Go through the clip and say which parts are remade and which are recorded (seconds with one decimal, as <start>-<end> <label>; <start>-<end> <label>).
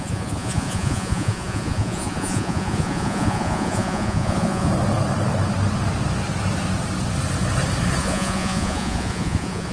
0.0-4.7 remade; 4.7-8.0 recorded; 8.0-9.7 remade